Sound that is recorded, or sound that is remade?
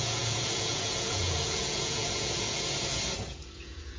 remade